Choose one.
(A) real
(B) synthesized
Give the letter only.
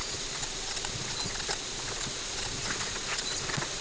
B